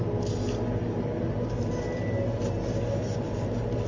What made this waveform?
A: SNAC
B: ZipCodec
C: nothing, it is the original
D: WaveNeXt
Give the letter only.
C